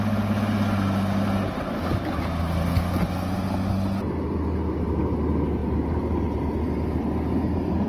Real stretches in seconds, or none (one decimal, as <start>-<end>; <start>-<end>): 0.0-7.9

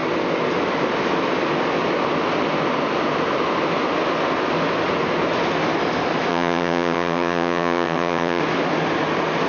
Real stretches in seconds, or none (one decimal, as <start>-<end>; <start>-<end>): 0.0-6.3; 8.4-9.5

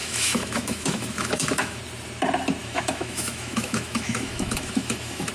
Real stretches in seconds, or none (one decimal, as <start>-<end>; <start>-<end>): 1.8-2.6